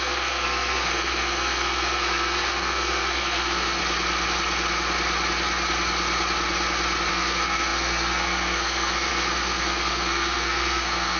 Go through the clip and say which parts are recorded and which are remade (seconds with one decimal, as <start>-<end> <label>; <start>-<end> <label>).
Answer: 0.0-3.8 remade; 3.8-7.1 recorded; 7.1-11.2 remade